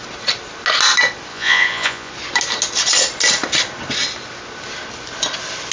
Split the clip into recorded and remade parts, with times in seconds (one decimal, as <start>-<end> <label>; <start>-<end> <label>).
0.0-1.3 recorded; 1.3-2.1 remade; 2.1-5.7 recorded